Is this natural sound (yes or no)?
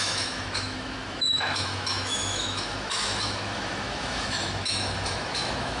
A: no